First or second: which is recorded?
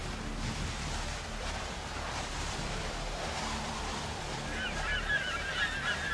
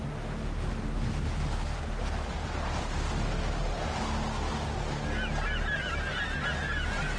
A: second